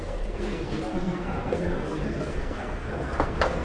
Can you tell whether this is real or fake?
fake